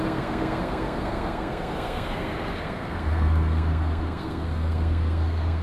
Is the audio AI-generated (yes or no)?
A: yes